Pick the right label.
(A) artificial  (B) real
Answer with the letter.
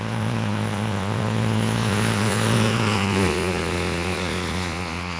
A